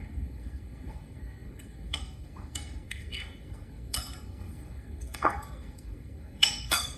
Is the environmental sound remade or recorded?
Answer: remade